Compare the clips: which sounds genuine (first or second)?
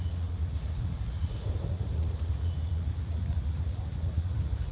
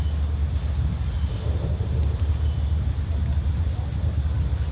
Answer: second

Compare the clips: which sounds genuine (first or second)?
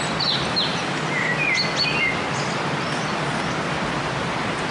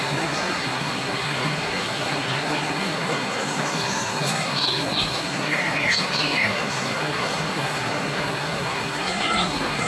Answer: first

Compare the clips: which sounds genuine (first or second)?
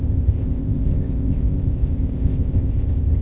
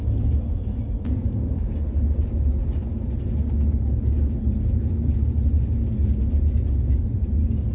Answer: second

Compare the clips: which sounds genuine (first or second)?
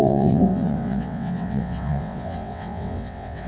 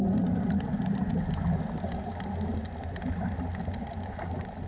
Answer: second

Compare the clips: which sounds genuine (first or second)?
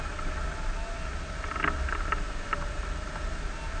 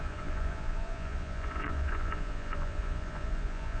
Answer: first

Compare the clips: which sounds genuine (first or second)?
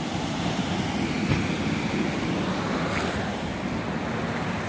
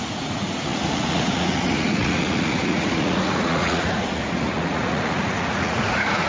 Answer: first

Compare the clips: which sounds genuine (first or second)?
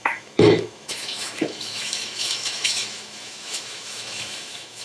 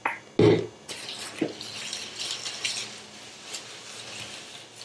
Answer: second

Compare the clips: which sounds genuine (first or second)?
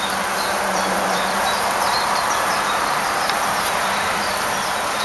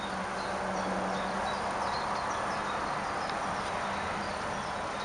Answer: second